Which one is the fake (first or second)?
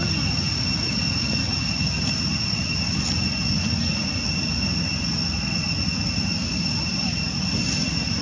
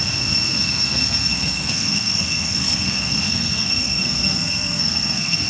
second